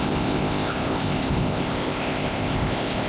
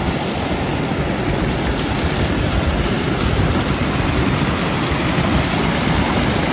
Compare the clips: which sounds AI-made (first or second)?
first